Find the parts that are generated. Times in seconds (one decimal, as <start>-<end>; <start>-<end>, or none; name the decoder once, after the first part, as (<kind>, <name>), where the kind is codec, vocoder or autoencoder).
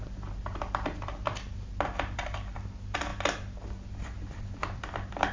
0.0-3.1 (vocoder, BigVGAN v2); 4.2-5.3